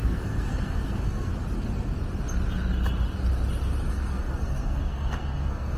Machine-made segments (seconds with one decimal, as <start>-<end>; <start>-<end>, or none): 0.0-1.3; 3.9-5.8